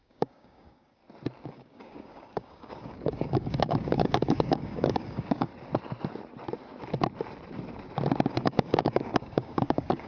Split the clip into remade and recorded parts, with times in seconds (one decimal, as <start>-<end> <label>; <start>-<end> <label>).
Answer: 0.0-1.0 remade; 1.0-1.5 recorded; 1.5-5.5 remade; 5.5-8.3 recorded; 8.3-10.1 remade